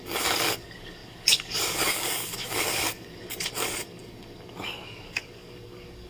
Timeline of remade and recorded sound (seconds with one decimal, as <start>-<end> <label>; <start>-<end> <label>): 0.0-6.1 remade